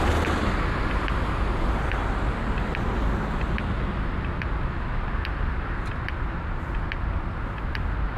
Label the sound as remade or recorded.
recorded